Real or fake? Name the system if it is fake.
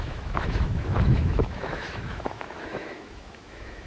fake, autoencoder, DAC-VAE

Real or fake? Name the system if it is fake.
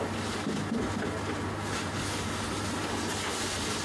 real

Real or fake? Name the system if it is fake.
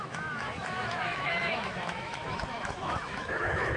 fake, autoencoder, DAC-VAE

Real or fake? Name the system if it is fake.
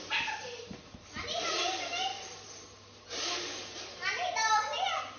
real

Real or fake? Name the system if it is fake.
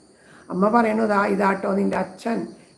real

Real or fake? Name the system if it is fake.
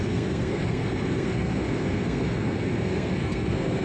fake, codec, SNAC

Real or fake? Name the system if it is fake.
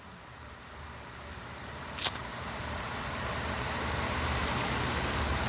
fake, vocoder, BigVGAN v2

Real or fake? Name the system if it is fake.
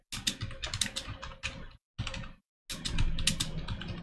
real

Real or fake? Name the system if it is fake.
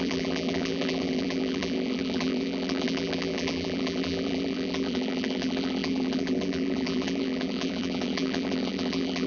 fake, vocoder, BigVGAN v2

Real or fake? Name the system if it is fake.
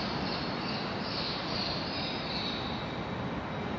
real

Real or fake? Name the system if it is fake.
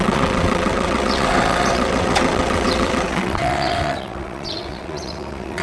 fake, vocoder, WaveNeXt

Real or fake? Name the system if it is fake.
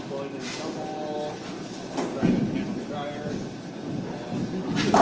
real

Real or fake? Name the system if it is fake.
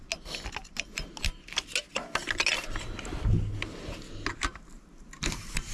real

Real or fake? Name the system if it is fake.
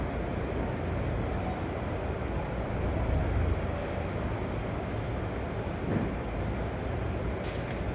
real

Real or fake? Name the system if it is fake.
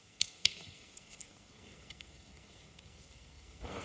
fake, codec, SNAC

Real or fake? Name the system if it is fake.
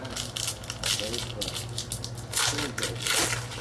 real